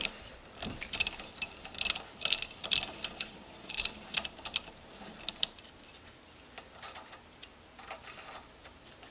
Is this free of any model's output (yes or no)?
yes